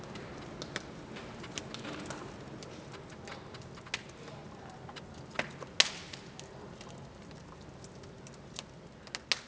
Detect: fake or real real